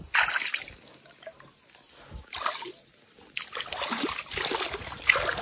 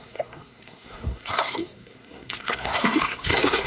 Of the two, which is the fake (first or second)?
second